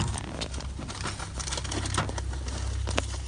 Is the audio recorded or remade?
recorded